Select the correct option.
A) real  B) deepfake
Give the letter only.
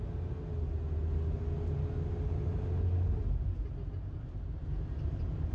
A